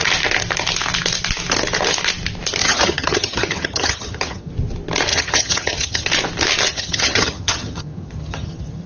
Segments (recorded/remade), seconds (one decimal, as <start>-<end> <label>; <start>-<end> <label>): 0.0-2.6 recorded; 2.6-4.5 remade; 4.5-5.1 recorded; 5.1-6.1 remade; 6.1-6.7 recorded; 6.7-8.9 remade

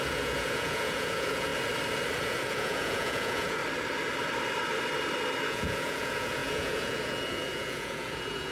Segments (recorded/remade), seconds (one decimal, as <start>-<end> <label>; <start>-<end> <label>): 0.0-1.5 remade; 1.5-2.2 recorded; 2.2-3.6 remade; 3.6-5.5 recorded; 5.5-8.5 remade

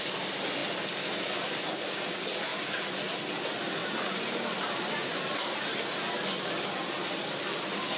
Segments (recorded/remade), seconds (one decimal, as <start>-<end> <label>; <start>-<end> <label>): 0.0-3.8 recorded; 3.8-6.1 remade; 6.1-8.0 recorded